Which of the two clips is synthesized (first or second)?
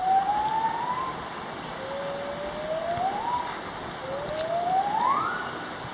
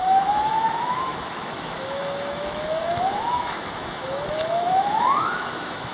second